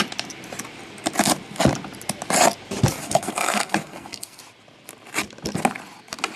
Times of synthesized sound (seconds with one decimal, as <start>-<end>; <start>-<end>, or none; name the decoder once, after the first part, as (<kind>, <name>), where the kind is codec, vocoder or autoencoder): 3.0-4.4 (codec, SNAC)